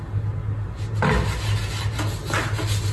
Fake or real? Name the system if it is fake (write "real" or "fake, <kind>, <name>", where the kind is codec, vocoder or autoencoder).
real